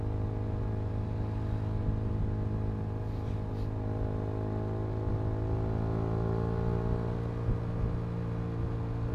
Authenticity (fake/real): real